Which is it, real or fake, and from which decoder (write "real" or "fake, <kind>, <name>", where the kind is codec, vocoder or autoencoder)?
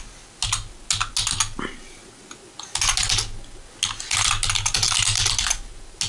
real